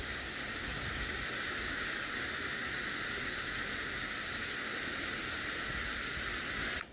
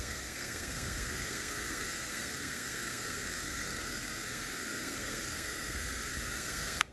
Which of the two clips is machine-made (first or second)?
second